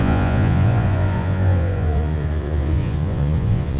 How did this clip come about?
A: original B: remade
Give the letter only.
B